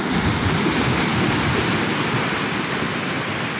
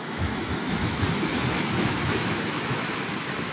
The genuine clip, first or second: first